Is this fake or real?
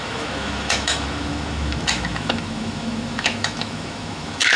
fake